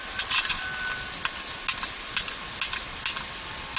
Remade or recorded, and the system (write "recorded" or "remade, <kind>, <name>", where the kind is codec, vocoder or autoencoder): recorded